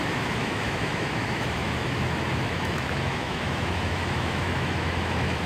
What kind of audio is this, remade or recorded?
remade